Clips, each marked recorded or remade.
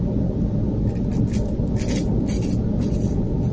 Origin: recorded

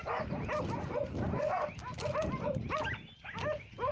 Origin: recorded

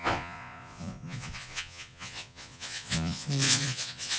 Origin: remade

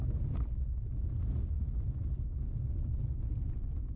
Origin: recorded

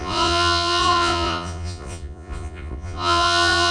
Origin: remade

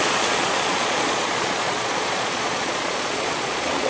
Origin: remade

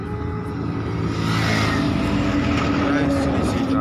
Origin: recorded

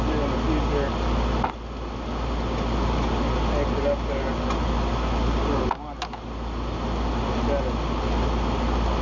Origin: recorded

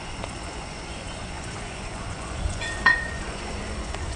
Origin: remade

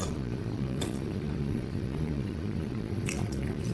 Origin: remade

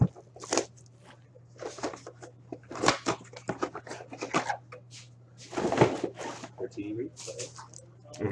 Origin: recorded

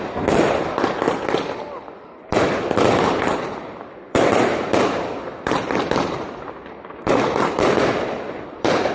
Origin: recorded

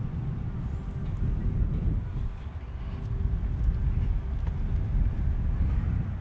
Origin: recorded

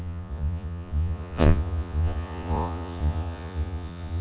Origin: remade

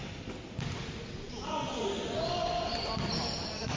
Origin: recorded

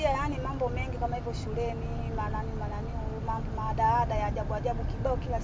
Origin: recorded